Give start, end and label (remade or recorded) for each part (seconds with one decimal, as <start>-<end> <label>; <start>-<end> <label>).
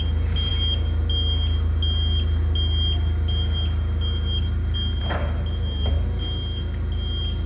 0.0-7.5 recorded